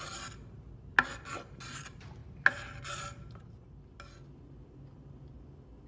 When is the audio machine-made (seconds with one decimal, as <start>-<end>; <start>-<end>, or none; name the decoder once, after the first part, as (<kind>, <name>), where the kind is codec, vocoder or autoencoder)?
none